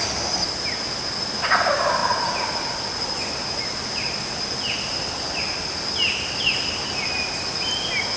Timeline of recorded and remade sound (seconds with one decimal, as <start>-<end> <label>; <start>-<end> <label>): 0.0-8.2 recorded